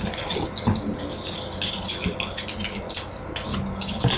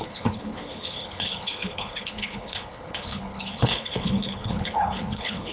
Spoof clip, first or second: second